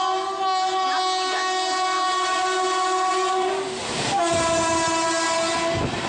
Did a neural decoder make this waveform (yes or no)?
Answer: no